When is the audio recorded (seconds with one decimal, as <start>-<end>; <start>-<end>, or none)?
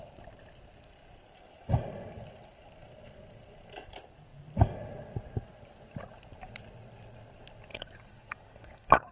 0.0-7.7